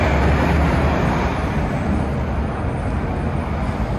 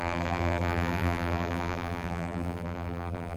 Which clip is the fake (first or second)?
second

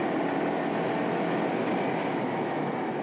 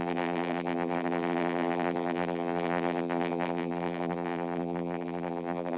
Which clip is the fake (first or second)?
second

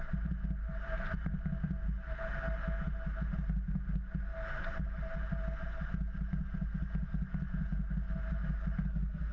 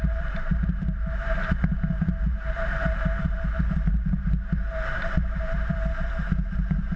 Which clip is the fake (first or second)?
second